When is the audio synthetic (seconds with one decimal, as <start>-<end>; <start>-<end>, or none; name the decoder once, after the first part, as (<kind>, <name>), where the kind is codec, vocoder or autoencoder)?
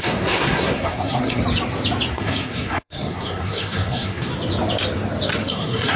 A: 0.0-1.4 (codec, SNAC); 2.1-4.3; 5.4-6.0